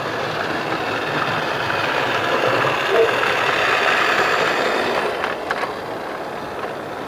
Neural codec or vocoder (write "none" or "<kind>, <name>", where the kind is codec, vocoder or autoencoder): none